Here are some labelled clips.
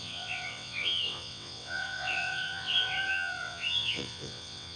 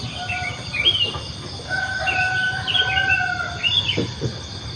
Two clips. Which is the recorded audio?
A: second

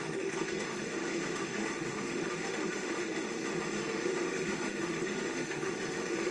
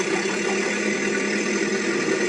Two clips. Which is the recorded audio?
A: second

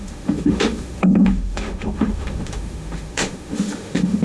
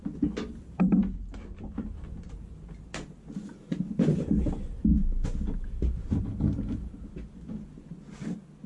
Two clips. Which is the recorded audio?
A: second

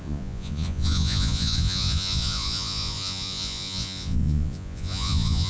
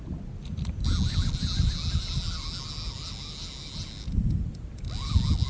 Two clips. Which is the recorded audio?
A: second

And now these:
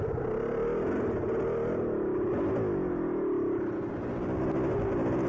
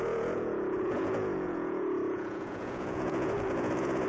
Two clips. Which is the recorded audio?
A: first